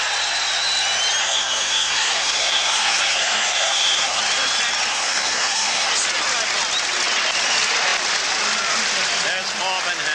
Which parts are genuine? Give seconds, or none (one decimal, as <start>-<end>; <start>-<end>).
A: 0.0-1.2; 4.2-4.9; 5.9-10.1